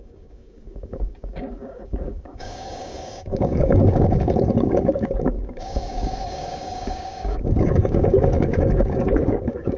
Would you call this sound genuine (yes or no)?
no